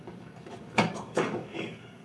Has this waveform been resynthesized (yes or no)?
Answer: yes